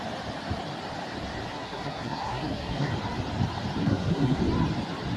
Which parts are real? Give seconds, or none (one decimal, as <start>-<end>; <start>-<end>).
0.0-1.5; 2.9-3.8; 4.4-5.2